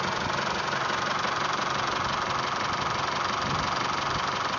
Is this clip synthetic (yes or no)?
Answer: no